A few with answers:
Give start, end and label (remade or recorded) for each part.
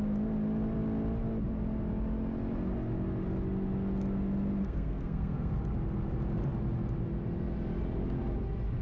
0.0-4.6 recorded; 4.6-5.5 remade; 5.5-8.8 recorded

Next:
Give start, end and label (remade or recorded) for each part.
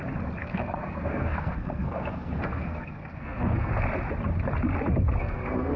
0.0-0.4 recorded; 0.4-3.7 remade; 3.7-5.2 recorded; 5.2-5.8 remade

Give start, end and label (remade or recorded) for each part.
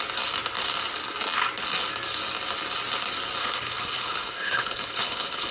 0.0-3.4 recorded; 3.4-5.5 remade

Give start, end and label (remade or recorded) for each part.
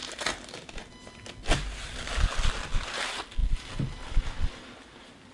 0.0-5.3 recorded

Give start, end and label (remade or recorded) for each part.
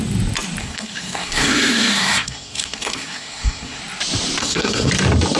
0.0-0.6 recorded; 0.6-3.8 remade; 3.8-4.4 recorded; 4.4-4.9 remade; 4.9-5.4 recorded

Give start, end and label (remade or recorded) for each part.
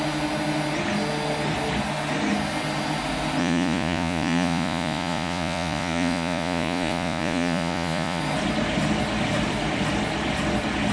0.0-3.4 recorded; 3.4-8.2 remade; 8.2-10.9 recorded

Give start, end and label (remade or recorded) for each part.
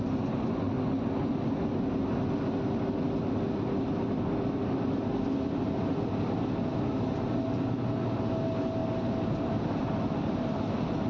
0.0-11.1 recorded